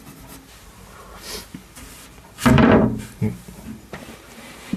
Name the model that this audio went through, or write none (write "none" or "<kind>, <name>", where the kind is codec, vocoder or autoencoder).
vocoder, BigVGAN v2